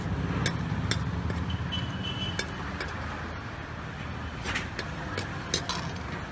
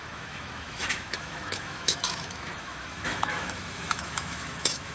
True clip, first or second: first